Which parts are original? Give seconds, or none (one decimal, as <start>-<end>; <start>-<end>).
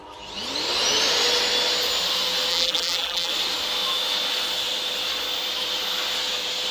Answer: 0.0-2.5; 3.3-6.7